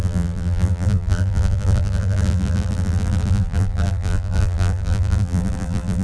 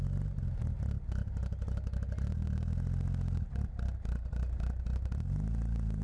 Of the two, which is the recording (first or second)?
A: second